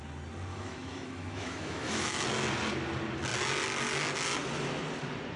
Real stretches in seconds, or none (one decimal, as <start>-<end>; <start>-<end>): 0.0-0.5; 2.2-5.4